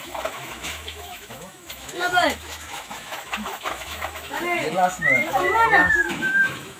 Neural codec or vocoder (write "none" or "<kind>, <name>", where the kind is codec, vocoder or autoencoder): autoencoder, DAC-VAE